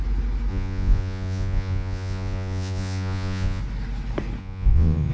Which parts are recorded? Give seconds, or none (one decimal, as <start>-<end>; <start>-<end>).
0.0-0.5; 3.6-4.4